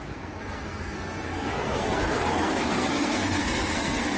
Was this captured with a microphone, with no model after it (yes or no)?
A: no